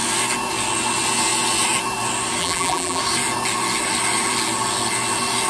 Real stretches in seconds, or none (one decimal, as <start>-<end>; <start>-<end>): 0.0-2.4; 3.0-5.5